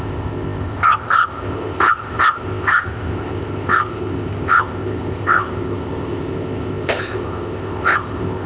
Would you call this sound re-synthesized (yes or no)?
yes